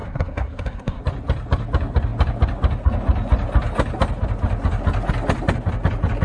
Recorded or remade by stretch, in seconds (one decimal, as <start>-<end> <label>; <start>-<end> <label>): 0.0-1.0 remade; 1.0-6.2 recorded